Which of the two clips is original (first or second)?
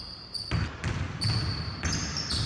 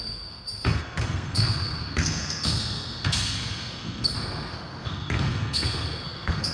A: first